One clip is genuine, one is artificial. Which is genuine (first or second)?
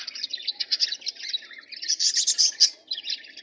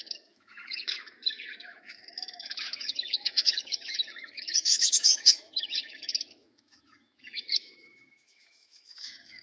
first